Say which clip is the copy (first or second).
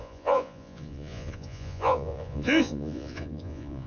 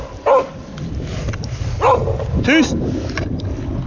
first